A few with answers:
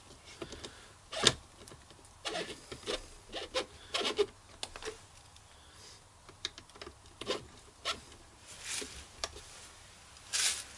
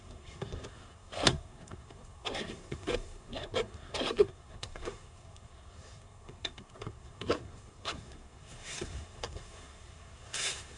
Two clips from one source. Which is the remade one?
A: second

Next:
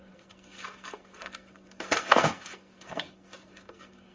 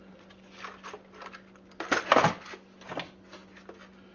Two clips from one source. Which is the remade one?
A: first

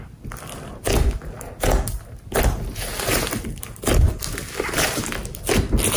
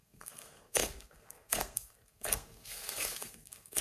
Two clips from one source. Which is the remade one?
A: second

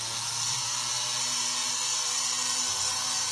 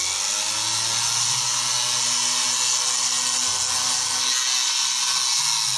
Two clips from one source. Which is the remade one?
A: first